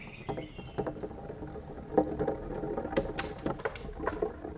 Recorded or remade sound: recorded